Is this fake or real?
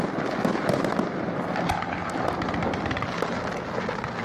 real